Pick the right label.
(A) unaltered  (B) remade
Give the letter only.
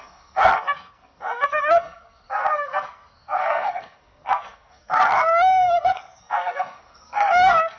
B